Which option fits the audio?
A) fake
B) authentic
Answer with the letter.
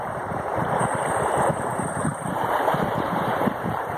A